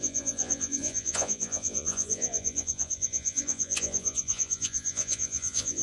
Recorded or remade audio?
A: remade